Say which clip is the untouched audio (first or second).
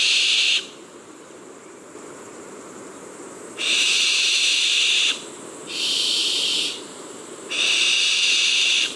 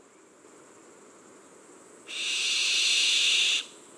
second